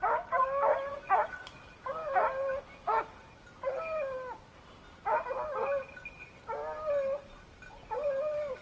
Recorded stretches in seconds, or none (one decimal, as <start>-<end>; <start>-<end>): 0.0-8.6